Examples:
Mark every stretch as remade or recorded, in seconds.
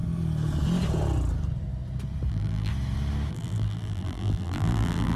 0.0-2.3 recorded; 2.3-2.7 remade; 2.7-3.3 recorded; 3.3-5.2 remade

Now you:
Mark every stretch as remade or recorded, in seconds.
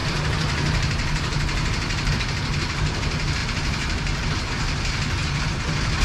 0.0-2.1 remade; 2.1-3.4 recorded; 3.4-4.5 remade; 4.5-5.2 recorded; 5.2-6.0 remade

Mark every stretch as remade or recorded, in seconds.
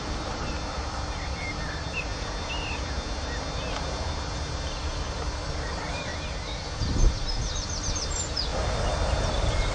0.0-2.1 remade; 2.1-4.8 recorded; 4.8-6.1 remade; 6.1-7.9 recorded; 7.9-8.5 remade; 8.5-9.2 recorded; 9.2-9.7 remade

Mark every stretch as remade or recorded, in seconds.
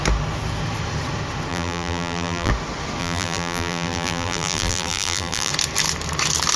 0.0-1.5 recorded; 1.5-2.5 remade; 2.5-3.0 recorded; 3.0-5.5 remade; 5.5-6.6 recorded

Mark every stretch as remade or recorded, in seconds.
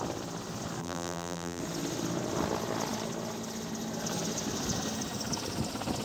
0.0-0.8 recorded; 0.8-1.6 remade; 1.6-6.0 recorded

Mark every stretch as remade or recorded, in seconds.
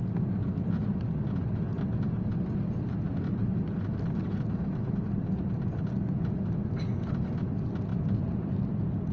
0.0-7.9 recorded; 7.9-8.7 remade; 8.7-9.1 recorded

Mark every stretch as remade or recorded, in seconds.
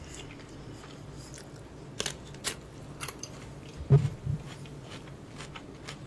0.0-2.4 recorded; 2.4-6.1 remade